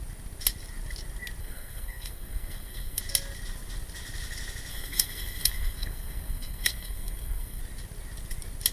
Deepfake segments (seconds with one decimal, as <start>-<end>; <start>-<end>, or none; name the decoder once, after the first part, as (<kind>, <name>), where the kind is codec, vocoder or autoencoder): 1.4-3.0 (codec, SNAC); 4.7-7.6